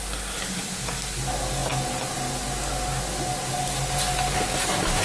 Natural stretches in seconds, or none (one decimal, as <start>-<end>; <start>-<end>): 0.0-5.0